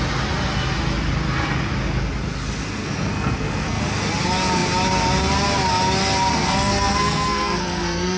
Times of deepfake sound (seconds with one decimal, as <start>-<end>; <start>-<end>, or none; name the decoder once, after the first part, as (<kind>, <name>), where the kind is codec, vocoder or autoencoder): 2.8-3.8 (codec, SNAC); 6.3-8.2

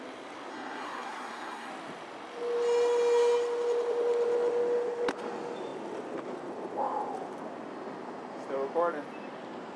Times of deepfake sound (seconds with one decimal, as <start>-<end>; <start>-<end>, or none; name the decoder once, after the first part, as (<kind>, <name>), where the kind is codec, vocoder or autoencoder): 0.5-1.7 (codec, SNAC)

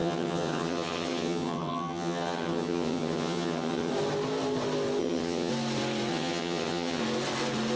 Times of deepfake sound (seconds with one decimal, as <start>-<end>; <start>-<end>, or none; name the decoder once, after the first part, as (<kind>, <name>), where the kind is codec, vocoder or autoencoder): 0.0-3.9 (vocoder, HiFi-GAN); 5.0-5.5; 6.1-7.0